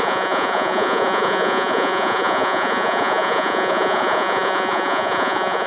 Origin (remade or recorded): remade